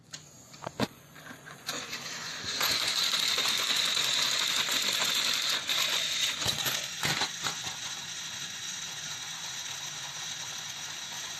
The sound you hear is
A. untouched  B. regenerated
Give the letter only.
B